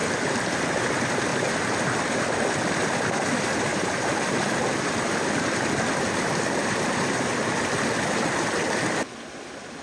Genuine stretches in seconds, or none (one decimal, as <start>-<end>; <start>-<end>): 0.9-1.3; 2.7-3.7; 7.0-9.8